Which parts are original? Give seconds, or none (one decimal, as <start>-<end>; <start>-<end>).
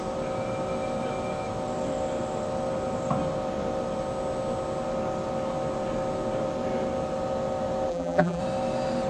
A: 0.0-7.9; 8.4-9.1